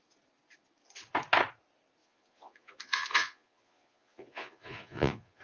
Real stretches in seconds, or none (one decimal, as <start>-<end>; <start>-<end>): 0.0-2.0